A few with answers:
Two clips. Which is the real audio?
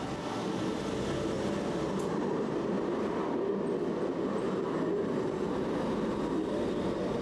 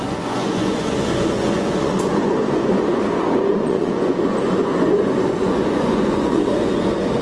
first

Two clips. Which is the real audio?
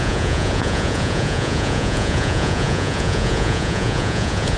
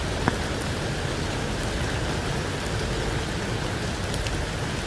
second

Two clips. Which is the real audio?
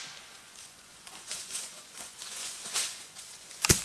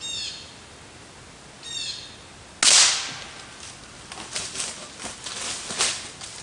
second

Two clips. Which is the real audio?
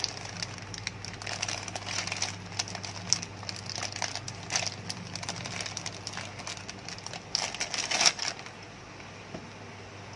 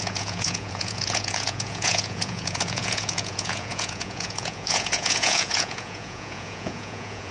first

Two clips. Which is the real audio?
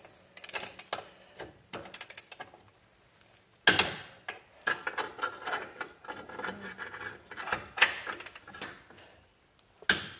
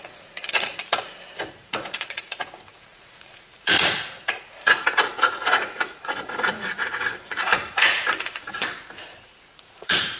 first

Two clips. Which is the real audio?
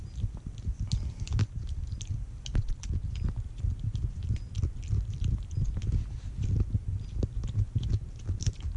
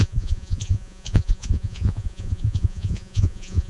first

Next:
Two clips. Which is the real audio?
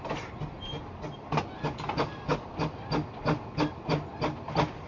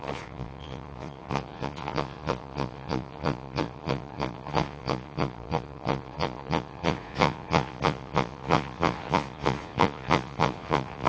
first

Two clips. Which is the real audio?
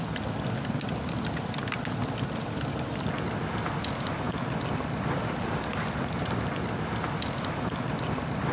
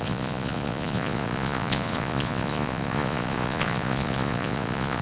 first